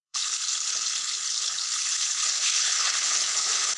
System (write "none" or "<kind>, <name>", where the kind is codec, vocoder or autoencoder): codec, HILCodec